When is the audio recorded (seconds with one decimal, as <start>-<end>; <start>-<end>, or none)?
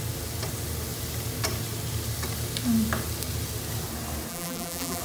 0.0-4.3